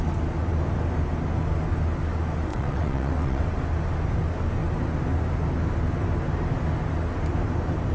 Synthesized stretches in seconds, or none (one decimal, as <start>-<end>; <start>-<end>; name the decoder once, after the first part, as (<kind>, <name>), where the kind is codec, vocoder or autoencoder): 2.5-3.4 (vocoder, WaveNeXt)